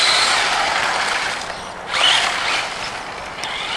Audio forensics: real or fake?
real